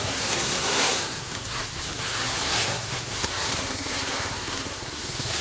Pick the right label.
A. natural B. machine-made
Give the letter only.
B